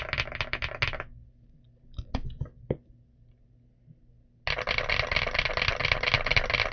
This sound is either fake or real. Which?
real